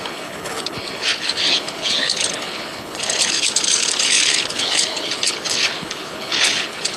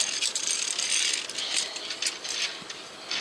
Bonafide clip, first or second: second